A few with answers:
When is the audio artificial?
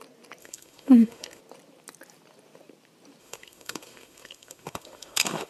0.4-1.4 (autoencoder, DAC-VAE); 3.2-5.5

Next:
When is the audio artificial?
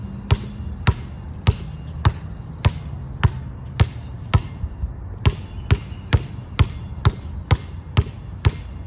none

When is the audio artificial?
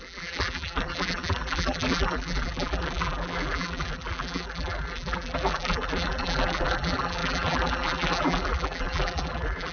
0.0-9.7 (vocoder, BigVGAN v2)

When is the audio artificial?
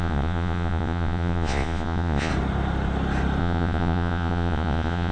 0.0-2.3 (vocoder, Vocos); 3.4-5.1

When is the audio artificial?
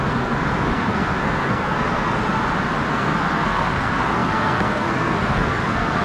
0.0-2.2 (codec, SNAC); 2.9-6.0